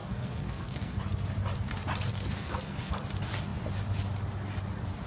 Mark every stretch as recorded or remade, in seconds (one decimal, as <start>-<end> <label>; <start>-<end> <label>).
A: 0.0-1.0 remade; 1.0-2.1 recorded; 2.1-2.9 remade; 2.9-5.1 recorded

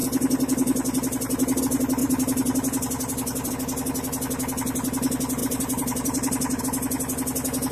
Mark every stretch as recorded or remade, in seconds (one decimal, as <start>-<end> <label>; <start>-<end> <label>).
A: 0.0-2.0 recorded; 2.0-3.5 remade; 3.5-5.4 recorded; 5.4-6.6 remade; 6.6-7.7 recorded

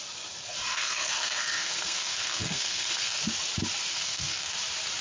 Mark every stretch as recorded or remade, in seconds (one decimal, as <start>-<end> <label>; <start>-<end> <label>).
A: 0.0-0.7 recorded; 0.7-3.2 remade; 3.2-3.9 recorded; 3.9-4.5 remade; 4.5-5.0 recorded

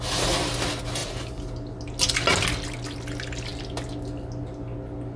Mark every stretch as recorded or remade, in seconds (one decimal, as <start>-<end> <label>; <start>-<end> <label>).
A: 0.0-5.2 recorded

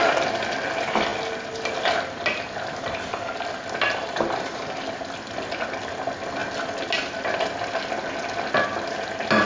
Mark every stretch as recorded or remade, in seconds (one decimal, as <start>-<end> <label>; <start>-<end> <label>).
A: 0.0-9.5 recorded

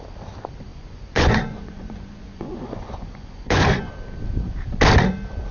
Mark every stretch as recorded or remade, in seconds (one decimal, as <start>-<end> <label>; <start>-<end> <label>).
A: 0.0-0.7 recorded; 0.7-3.9 remade; 3.9-5.5 recorded

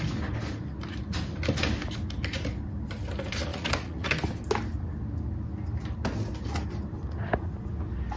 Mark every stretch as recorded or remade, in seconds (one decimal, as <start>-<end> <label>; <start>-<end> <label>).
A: 0.0-3.5 recorded; 3.5-4.1 remade; 4.1-8.2 recorded

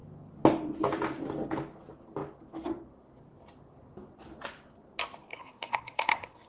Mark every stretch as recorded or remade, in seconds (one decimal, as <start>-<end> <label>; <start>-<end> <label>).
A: 0.0-5.3 recorded; 5.3-6.5 remade